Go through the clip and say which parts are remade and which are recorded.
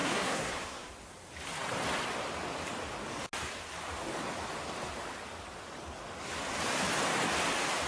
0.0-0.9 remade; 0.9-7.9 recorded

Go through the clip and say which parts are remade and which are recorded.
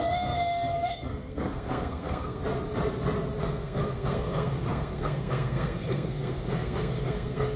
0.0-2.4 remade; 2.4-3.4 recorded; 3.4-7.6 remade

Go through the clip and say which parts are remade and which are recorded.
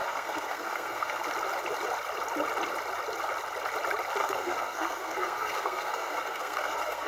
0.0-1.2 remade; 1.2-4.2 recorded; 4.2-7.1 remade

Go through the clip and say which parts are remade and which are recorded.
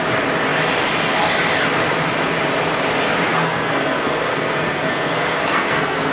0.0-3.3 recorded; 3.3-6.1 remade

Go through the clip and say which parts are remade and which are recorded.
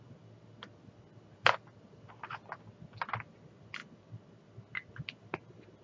0.0-5.8 recorded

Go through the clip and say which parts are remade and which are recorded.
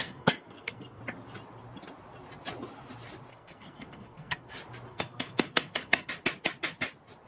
0.0-1.0 remade; 1.0-3.3 recorded; 3.3-4.5 remade; 4.5-4.9 recorded; 4.9-6.1 remade; 6.1-7.3 recorded